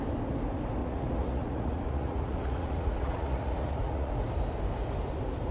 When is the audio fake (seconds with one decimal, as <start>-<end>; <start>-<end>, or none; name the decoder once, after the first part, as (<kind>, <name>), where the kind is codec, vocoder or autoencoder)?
0.8-4.1 (vocoder, Vocos)